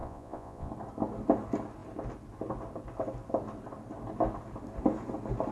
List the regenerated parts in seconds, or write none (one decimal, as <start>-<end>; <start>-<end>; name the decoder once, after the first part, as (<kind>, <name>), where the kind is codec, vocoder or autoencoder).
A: 0.0-0.7 (vocoder, Vocos)